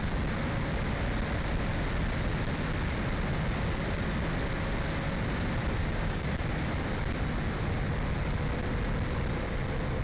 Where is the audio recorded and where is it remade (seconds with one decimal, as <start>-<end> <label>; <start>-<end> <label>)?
0.0-5.8 recorded; 5.8-6.3 remade; 6.3-10.0 recorded